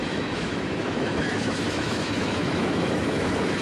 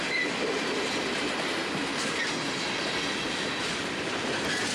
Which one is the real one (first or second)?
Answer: second